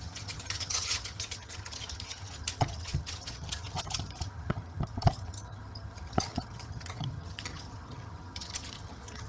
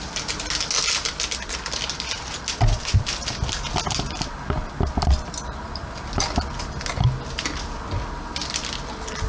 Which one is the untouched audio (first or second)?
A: second